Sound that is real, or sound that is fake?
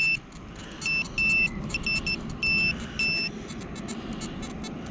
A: real